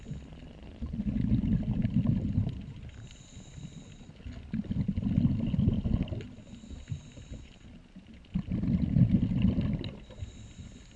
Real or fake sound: real